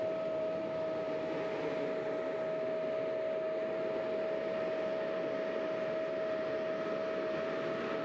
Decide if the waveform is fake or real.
real